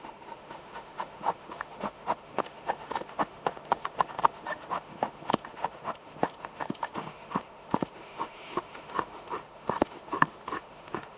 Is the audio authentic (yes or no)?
no